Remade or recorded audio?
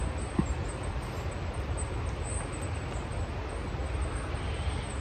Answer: recorded